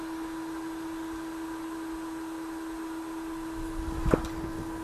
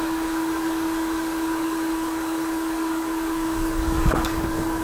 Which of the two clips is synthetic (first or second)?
second